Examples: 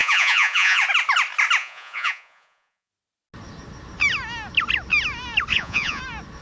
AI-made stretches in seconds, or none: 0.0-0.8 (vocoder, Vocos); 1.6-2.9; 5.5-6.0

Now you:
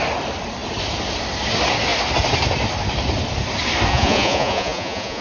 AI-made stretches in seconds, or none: 3.9-5.2 (vocoder, Vocos)

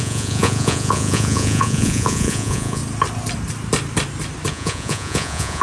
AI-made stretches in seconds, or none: 0.0-2.8 (vocoder, Vocos); 4.5-5.6

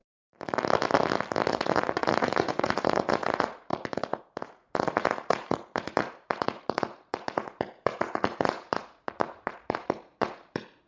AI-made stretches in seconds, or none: 1.5-10.9 (vocoder, Vocos)

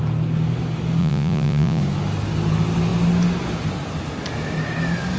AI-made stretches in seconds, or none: 1.0-1.8 (vocoder, Vocos)

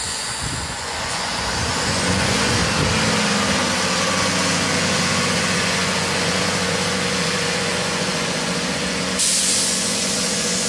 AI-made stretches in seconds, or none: 0.0-2.6 (vocoder, Vocos); 4.0-10.7

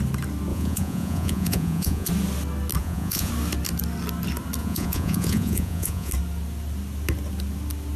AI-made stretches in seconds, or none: 0.5-2.1 (vocoder, Vocos); 2.8-3.3; 4.6-6.1

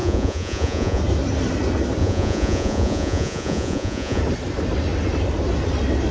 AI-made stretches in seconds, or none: 0.0-1.0 (vocoder, Vocos); 2.0-4.2